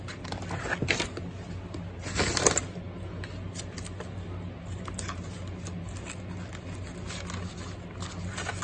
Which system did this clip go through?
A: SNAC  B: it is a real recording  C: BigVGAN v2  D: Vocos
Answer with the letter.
B